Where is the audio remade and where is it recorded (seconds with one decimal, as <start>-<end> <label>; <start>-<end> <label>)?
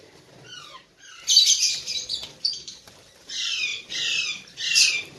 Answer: 0.0-5.2 remade